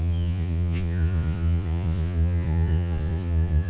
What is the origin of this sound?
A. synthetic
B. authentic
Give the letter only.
A